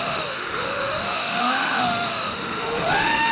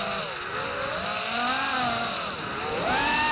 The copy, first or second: first